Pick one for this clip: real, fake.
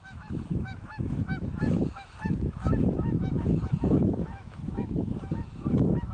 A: fake